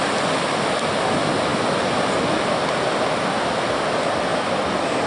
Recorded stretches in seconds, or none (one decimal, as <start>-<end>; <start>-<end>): 0.0-5.1